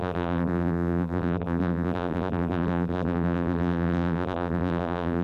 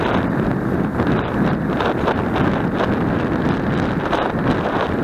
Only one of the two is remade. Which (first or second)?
first